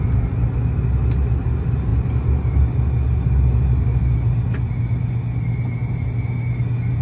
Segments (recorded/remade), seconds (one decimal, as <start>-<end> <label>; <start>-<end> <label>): 0.0-7.0 recorded